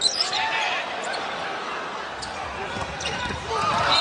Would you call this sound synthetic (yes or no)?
no